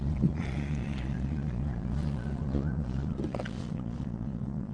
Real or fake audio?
fake